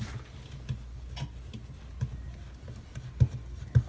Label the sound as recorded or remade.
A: recorded